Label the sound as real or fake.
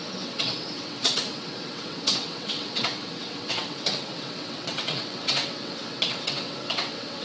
fake